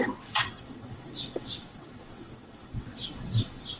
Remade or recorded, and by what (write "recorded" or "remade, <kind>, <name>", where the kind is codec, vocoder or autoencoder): remade, vocoder, WaveNeXt